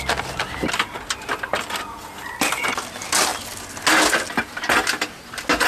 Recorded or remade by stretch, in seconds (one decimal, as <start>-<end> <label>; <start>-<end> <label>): 0.0-5.7 recorded